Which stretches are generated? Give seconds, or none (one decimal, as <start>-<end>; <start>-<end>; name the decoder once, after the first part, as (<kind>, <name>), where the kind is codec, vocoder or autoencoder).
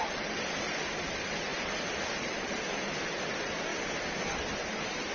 none